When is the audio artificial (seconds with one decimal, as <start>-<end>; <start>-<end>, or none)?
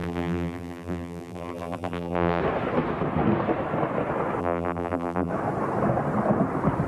0.0-2.4; 4.4-5.3